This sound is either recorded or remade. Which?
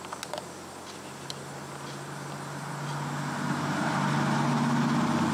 recorded